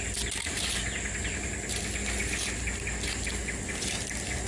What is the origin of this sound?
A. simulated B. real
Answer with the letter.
B